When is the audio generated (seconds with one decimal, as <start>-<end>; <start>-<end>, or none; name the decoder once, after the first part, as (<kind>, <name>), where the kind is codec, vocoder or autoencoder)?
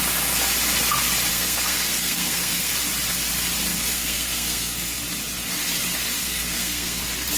1.3-2.7 (codec, SNAC); 3.7-5.0; 6.2-7.0